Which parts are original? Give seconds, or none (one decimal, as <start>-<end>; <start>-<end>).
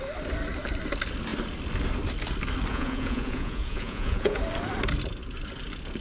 0.0-2.7; 4.4-6.0